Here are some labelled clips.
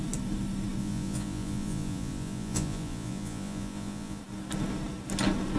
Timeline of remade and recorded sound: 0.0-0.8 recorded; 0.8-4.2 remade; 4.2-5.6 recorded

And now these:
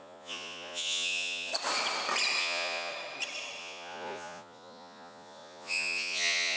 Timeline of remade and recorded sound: 0.0-1.5 remade; 1.5-2.4 recorded; 2.4-2.9 remade; 2.9-3.6 recorded; 3.6-6.6 remade

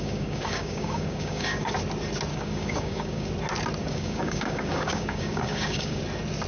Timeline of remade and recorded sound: 0.0-1.7 remade; 1.7-2.3 recorded; 2.3-3.3 remade; 3.3-3.8 recorded; 3.8-6.0 remade; 6.0-6.5 recorded

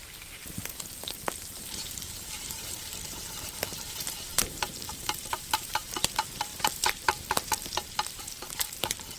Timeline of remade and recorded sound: 0.0-2.9 remade; 2.9-4.1 recorded; 4.1-6.5 remade; 6.5-8.2 recorded; 8.2-9.2 remade

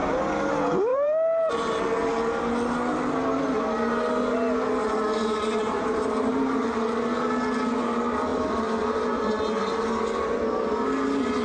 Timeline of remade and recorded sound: 0.0-0.9 recorded; 0.9-1.5 remade; 1.5-5.6 recorded; 5.6-6.6 remade; 6.6-8.3 recorded; 8.3-9.2 remade; 9.2-11.4 recorded

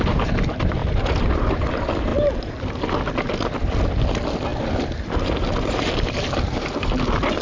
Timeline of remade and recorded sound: 0.0-0.8 recorded; 0.8-1.7 remade; 1.7-4.5 recorded; 4.5-6.9 remade; 6.9-7.4 recorded